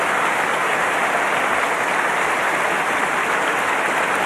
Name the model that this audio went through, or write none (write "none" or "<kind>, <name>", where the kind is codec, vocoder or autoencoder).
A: none